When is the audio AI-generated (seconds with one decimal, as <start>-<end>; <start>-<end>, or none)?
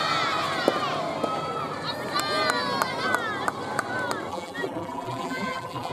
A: 4.3-5.9